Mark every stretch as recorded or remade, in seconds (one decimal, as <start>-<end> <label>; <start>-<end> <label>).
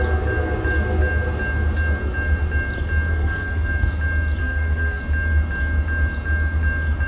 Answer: 0.0-3.1 recorded; 3.1-3.7 remade; 3.7-4.4 recorded; 4.4-5.0 remade; 5.0-7.1 recorded